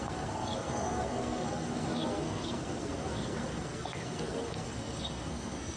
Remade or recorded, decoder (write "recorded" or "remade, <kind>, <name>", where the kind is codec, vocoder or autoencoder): remade, codec, SNAC